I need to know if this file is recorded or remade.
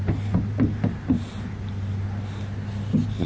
recorded